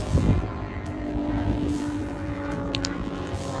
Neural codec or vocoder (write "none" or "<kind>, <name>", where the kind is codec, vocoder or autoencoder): vocoder, BigVGAN v2